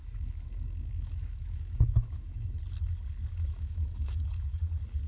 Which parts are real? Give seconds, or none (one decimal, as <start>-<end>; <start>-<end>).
2.6-3.3; 4.6-5.1